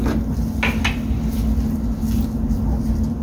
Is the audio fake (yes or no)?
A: no